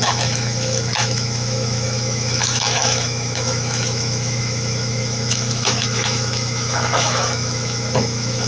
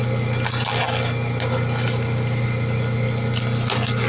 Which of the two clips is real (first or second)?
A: second